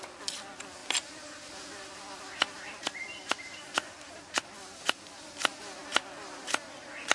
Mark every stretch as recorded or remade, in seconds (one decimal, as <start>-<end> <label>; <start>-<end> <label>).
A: 0.0-7.1 recorded